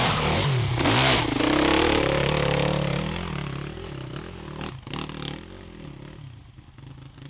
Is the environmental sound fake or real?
real